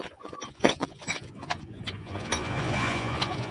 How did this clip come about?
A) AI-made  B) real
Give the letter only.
A